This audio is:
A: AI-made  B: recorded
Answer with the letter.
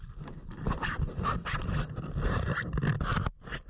A